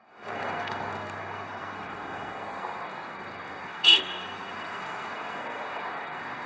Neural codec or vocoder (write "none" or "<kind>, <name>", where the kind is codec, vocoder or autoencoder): codec, SNAC